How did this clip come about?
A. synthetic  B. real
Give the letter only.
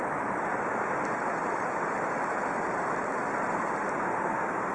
B